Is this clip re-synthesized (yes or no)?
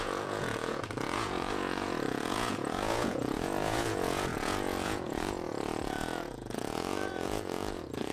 yes